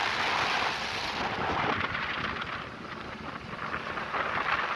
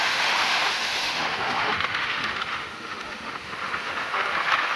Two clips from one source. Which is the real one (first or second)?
first